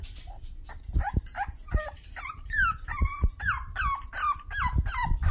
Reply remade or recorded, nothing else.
remade